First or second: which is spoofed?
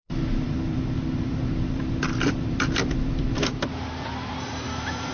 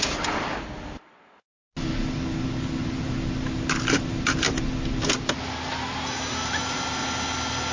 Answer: first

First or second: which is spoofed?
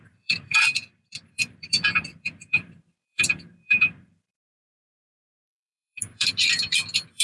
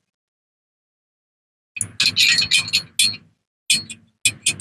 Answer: first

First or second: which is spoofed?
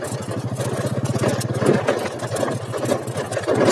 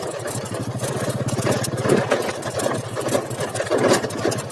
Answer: second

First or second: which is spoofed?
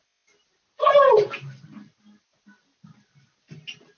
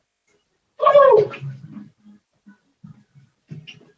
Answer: second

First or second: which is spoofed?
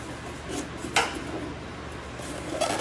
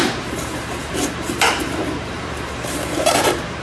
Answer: second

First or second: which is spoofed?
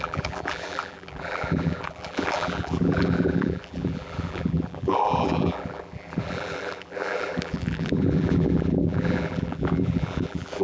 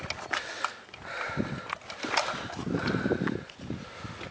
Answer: first